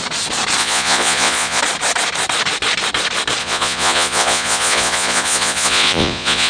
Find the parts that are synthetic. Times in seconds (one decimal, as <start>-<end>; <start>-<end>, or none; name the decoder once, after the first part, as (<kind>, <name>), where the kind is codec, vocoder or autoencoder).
0.6-1.6 (vocoder, Vocos); 3.4-6.5